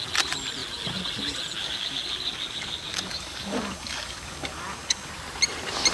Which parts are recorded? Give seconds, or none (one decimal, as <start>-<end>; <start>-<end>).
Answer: 0.0-1.6; 5.1-5.9